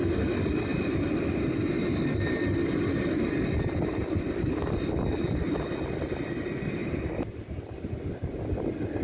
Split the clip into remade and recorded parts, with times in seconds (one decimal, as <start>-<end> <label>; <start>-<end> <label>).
0.0-6.8 recorded; 6.8-8.4 remade; 8.4-9.0 recorded